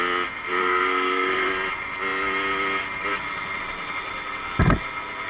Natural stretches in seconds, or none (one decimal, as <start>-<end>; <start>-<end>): 0.0-0.6; 1.5-5.3